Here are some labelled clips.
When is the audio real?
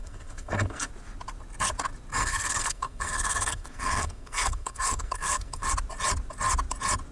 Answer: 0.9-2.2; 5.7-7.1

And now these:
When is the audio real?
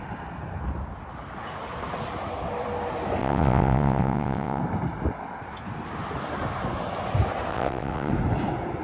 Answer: 0.0-3.2; 4.6-7.5; 8.1-8.8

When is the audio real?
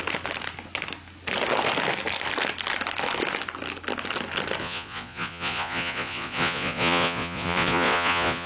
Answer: 0.0-4.6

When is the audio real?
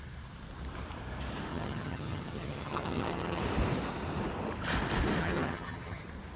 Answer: 0.0-1.5; 3.4-5.2; 6.0-6.4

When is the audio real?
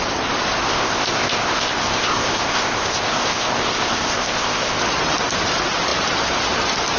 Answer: 0.0-0.6; 4.8-7.0